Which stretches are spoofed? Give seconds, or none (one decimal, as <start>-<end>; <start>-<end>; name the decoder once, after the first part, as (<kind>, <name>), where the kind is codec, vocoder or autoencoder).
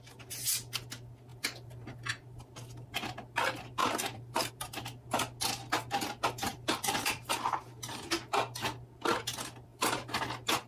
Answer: 1.3-2.1 (vocoder, BigVGAN v2); 3.8-4.5; 6.5-8.3; 9.7-10.2